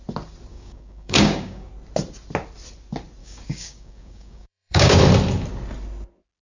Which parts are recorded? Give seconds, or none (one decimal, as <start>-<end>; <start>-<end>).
0.0-0.5; 1.7-3.2; 5.0-6.5